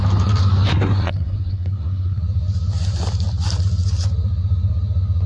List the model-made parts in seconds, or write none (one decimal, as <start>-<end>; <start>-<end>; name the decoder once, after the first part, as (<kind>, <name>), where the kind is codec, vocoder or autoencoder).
0.7-2.2 (codec, SNAC)